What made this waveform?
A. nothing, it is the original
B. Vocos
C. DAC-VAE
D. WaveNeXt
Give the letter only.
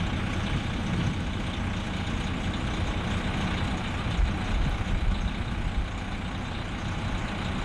A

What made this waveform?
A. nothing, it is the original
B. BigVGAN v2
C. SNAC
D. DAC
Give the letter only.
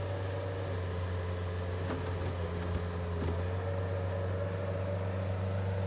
A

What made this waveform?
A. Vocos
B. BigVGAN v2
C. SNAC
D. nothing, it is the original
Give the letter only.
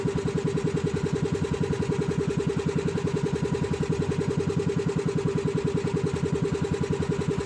D